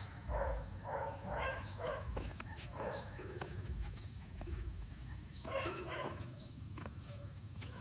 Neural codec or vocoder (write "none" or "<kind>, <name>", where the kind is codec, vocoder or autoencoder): autoencoder, DAC-VAE